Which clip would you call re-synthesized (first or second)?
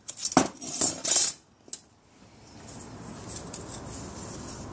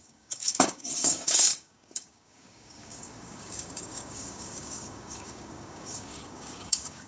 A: second